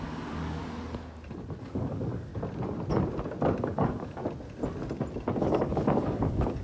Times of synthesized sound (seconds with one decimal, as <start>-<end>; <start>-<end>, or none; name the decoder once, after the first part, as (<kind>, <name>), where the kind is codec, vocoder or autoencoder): 0.0-0.6 (codec, DAC); 1.6-2.3; 3.6-4.2; 5.4-6.6